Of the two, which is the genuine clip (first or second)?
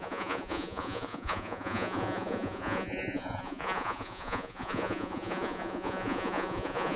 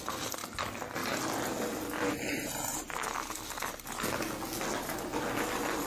second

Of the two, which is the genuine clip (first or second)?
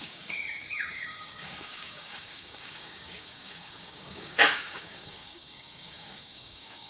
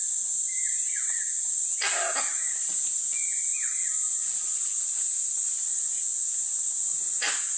second